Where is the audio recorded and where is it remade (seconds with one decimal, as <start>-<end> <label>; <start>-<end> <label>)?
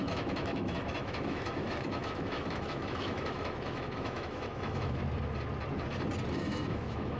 0.0-5.0 remade; 5.0-6.3 recorded; 6.3-7.2 remade